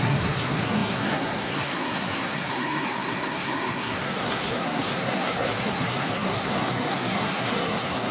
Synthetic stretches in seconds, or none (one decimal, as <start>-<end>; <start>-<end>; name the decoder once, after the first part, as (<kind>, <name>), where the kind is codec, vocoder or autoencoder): 0.0-8.1 (codec, SNAC)